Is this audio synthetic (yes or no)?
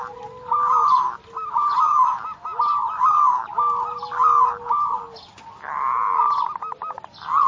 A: no